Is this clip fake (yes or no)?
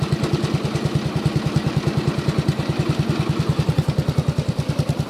no